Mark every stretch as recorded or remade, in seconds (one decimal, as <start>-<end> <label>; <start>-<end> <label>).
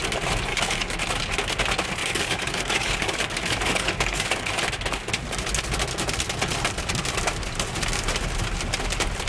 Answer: 0.0-0.5 recorded; 0.5-1.0 remade; 1.0-2.0 recorded; 2.0-4.5 remade; 4.5-9.3 recorded